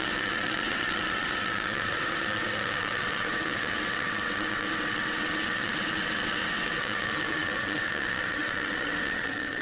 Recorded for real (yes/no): no